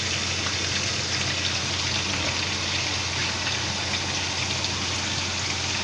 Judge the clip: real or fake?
real